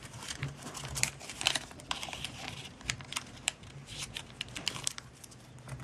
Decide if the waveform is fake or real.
fake